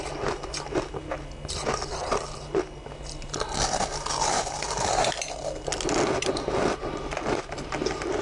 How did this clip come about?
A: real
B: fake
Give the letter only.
A